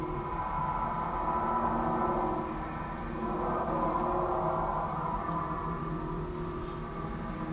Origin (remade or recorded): recorded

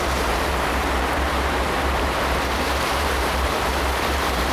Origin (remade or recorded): remade